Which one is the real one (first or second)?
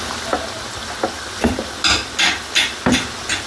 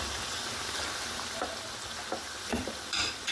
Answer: first